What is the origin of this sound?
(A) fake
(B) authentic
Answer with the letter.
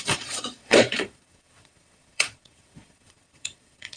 A